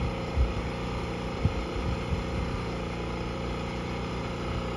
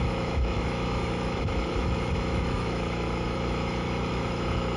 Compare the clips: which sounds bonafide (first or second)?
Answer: first